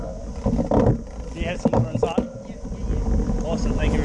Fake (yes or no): no